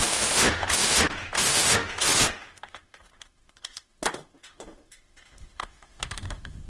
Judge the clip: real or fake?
fake